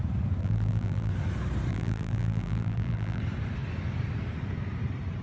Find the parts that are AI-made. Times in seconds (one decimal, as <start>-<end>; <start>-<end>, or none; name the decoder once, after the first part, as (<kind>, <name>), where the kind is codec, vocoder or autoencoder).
0.4-1.1 (vocoder, BigVGAN v2); 1.7-3.2